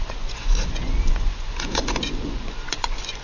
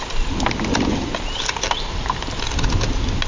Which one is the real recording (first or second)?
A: second